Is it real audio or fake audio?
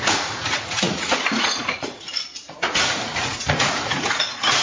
fake